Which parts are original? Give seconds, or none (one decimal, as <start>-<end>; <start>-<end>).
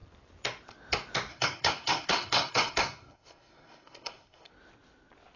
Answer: 0.0-1.3; 4.5-5.4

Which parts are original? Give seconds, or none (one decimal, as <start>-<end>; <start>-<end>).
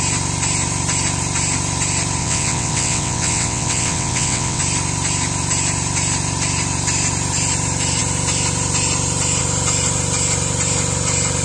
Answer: 0.0-2.2; 4.6-11.4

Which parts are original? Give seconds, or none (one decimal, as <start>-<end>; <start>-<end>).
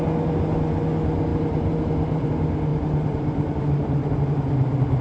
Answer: 0.0-1.3; 2.3-2.7; 4.4-5.0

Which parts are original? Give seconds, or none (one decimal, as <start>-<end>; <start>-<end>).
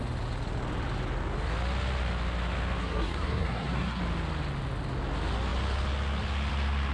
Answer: 0.0-2.8; 4.0-6.9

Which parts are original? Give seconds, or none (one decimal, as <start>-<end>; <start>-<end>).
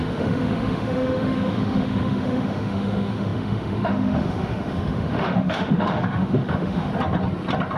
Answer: 6.9-7.8